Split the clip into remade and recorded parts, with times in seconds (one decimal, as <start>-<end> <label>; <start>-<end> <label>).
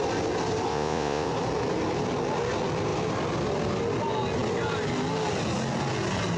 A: 0.0-0.7 recorded; 0.7-1.3 remade; 1.3-6.4 recorded